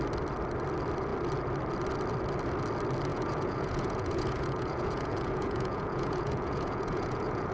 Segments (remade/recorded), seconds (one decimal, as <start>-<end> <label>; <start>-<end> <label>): 0.0-3.1 recorded; 3.1-7.5 remade